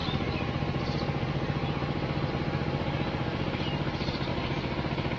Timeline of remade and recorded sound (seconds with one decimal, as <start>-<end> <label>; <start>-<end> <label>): 0.0-4.3 recorded; 4.3-5.2 remade